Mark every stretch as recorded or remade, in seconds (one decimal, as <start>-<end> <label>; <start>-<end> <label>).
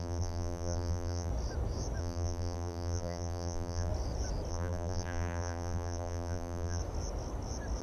0.0-1.3 remade; 1.3-2.0 recorded; 2.0-3.9 remade; 3.9-4.5 recorded; 4.5-6.8 remade; 6.8-7.8 recorded